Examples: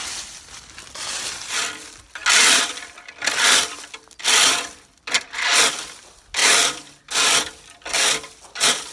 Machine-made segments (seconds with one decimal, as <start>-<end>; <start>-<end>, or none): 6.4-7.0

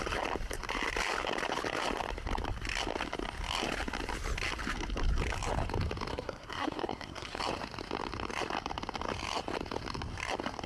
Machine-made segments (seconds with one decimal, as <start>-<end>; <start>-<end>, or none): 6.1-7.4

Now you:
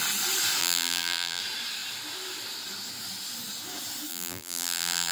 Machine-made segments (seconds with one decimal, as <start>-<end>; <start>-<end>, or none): 0.6-1.4; 4.1-5.1

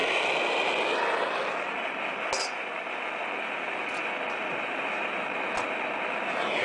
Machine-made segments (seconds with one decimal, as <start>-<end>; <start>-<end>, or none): none

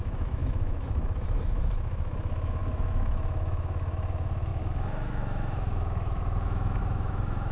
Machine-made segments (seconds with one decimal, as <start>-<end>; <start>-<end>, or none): 0.0-7.5